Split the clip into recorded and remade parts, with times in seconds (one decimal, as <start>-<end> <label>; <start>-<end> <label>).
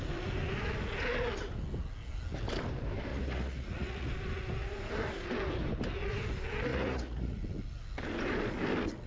0.0-3.1 recorded; 3.1-4.1 remade; 4.1-6.7 recorded; 6.7-7.4 remade; 7.4-9.1 recorded